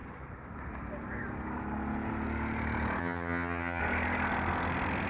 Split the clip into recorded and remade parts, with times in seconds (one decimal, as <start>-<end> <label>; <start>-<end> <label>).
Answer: 0.0-3.0 recorded; 3.0-3.8 remade; 3.8-5.1 recorded